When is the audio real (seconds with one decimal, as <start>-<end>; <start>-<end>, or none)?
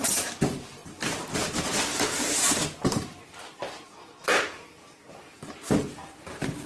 none